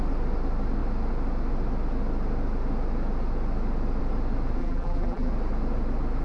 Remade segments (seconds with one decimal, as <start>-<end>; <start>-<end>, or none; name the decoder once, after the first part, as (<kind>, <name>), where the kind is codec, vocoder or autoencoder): 4.6-5.3 (vocoder, BigVGAN v2)